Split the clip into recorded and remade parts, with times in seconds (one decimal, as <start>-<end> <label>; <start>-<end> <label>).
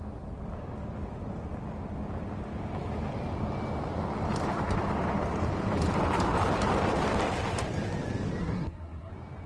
0.0-8.4 recorded; 8.4-9.1 remade; 9.1-9.5 recorded